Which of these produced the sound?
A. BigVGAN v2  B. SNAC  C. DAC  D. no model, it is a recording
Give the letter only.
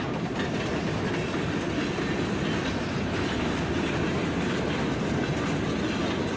D